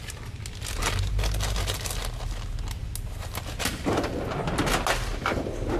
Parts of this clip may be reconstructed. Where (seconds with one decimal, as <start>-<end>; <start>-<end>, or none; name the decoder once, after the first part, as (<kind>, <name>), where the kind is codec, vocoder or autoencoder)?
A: none